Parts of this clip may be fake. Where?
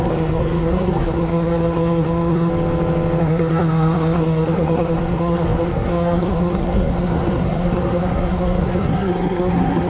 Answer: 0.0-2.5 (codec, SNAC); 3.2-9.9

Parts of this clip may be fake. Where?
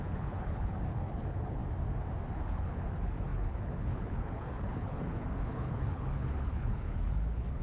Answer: 0.0-1.6 (codec, HILCodec); 2.3-7.6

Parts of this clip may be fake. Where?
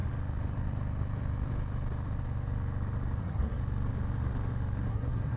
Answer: 3.2-3.6 (codec, SNAC); 4.9-5.4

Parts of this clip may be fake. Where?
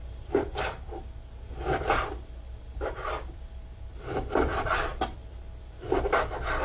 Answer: 2.4-6.6 (vocoder, BigVGAN v2)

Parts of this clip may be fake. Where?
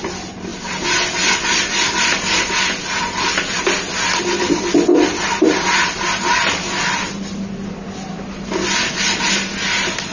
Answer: none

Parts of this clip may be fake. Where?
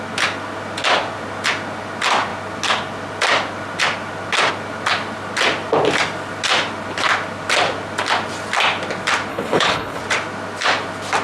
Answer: 9.3-10.0 (codec, HILCodec)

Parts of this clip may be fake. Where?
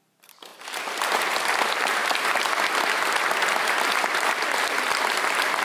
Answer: 0.0-2.0 (vocoder, BigVGAN v2); 3.9-5.6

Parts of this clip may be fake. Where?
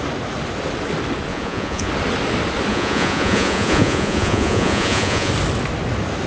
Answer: 1.3-1.9 (vocoder, Vocos); 2.7-5.3